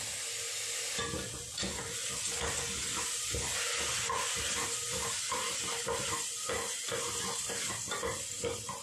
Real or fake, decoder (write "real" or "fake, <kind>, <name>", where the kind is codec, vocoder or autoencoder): real